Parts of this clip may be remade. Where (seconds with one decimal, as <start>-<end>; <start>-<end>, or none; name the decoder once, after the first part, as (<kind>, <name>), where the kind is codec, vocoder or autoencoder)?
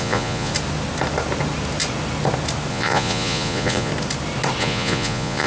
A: 0.0-0.5 (vocoder, Vocos); 2.7-3.9; 4.6-5.5